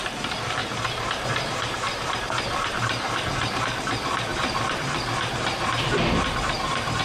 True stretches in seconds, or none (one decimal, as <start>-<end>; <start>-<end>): 0.0-0.6; 3.6-4.3